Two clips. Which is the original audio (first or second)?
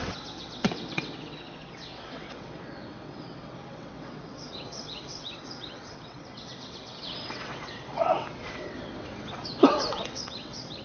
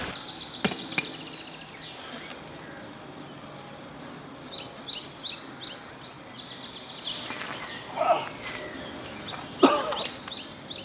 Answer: second